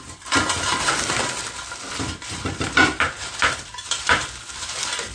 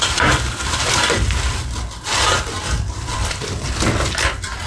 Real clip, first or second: first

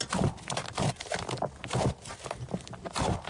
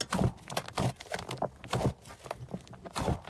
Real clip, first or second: second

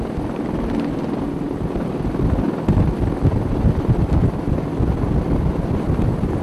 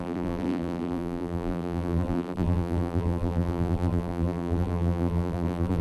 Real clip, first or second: first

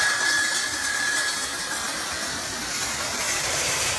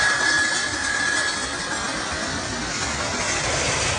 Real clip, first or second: second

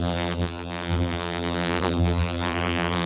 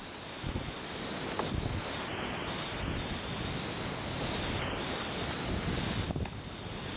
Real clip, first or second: second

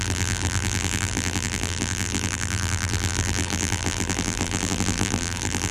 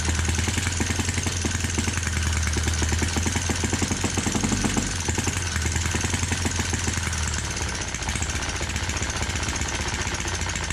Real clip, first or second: second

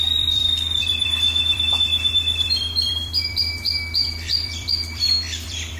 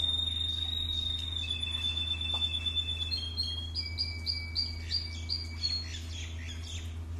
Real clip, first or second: second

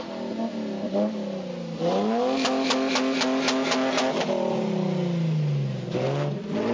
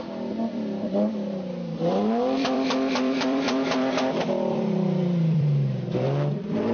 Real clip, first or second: first